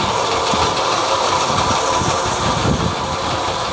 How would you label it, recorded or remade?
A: remade